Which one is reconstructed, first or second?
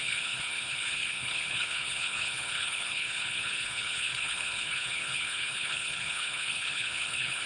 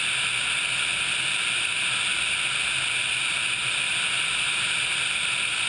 first